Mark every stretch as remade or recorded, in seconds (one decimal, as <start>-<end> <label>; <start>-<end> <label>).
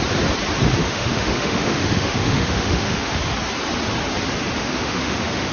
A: 0.0-0.8 recorded; 0.8-3.2 remade; 3.2-4.6 recorded; 4.6-5.5 remade